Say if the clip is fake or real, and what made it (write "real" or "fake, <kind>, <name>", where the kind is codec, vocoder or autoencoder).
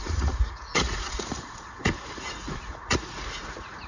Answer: fake, vocoder, Vocos